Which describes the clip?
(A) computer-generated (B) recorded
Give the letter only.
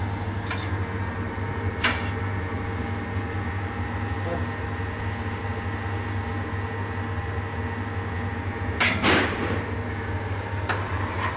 B